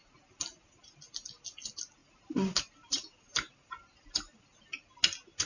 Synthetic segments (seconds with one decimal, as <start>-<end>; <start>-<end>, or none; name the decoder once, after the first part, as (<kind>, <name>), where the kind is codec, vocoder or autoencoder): 2.0-4.6 (vocoder, BigVGAN v2)